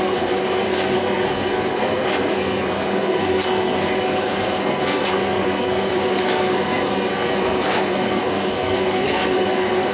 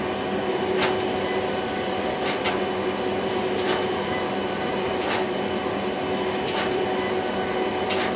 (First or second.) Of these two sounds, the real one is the second